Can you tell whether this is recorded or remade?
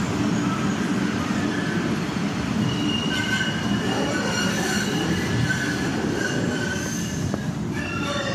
remade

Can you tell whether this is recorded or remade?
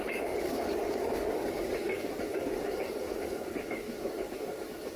remade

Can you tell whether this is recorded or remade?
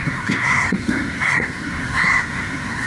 remade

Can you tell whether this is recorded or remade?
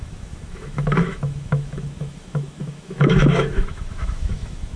remade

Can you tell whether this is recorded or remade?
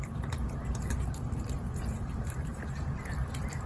remade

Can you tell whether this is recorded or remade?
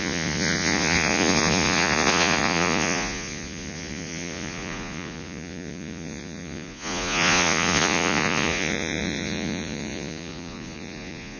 remade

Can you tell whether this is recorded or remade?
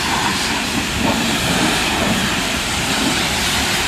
remade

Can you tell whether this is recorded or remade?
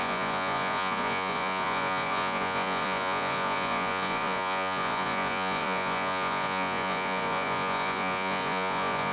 remade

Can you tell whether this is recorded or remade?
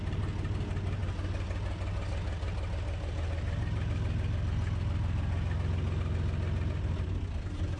recorded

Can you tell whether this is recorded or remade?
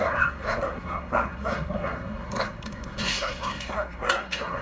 remade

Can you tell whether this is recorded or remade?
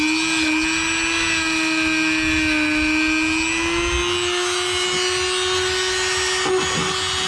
recorded